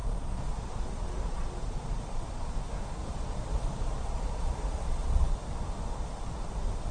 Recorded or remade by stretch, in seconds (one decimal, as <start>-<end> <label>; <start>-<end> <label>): 0.0-2.4 remade; 2.4-3.0 recorded; 3.0-5.3 remade; 5.3-6.9 recorded